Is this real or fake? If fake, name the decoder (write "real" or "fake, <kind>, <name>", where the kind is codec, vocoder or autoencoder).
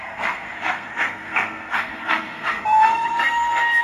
fake, codec, SNAC